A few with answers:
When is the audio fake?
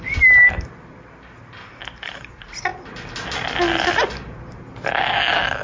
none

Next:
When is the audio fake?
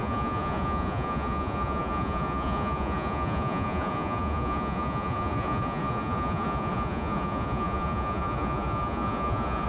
0.0-9.7 (vocoder, Vocos)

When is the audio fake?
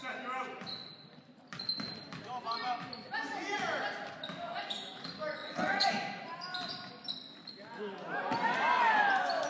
5.4-5.9 (vocoder, WaveNeXt)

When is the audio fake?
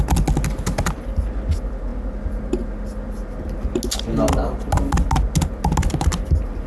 none